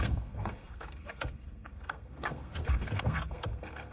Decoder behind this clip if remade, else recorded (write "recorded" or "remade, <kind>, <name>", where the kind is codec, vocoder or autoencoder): remade, codec, SNAC